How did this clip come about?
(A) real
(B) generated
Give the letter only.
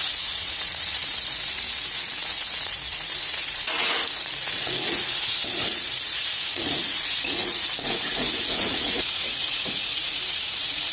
B